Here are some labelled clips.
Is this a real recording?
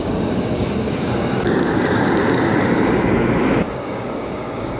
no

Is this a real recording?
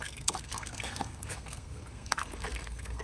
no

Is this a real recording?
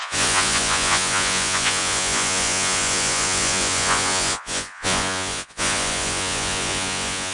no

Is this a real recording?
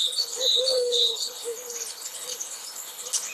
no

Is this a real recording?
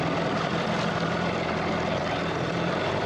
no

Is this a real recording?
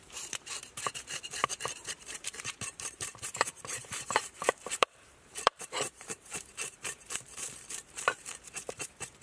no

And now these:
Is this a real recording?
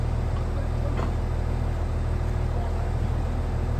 yes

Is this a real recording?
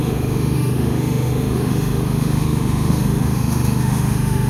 no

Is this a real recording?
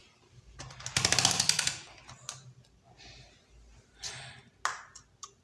yes